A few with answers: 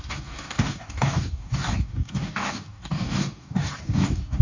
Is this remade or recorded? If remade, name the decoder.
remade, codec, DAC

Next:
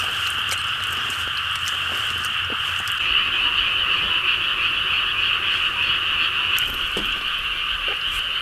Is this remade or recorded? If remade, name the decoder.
recorded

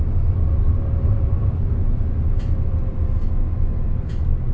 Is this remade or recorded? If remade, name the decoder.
recorded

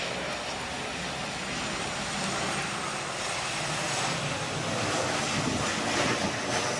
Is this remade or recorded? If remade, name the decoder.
recorded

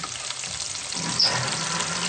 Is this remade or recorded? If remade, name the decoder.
recorded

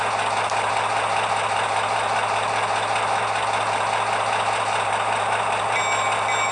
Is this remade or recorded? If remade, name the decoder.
recorded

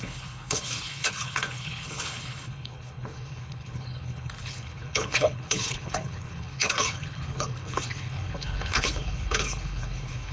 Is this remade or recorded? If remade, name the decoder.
remade, codec, HILCodec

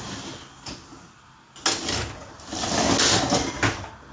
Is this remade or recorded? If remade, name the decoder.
recorded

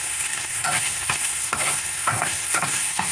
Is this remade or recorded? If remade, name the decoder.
remade, codec, SNAC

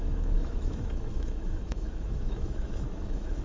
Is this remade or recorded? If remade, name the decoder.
remade, autoencoder, DAC-VAE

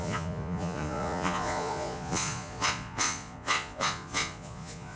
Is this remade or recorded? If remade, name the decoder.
remade, vocoder, Vocos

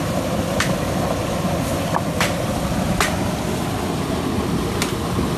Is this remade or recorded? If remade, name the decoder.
recorded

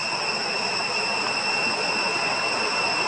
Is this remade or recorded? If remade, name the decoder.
recorded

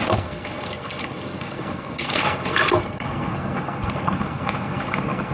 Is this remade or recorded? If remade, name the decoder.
remade, codec, SNAC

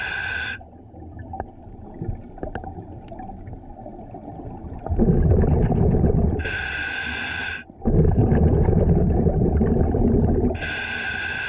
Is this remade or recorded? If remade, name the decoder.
recorded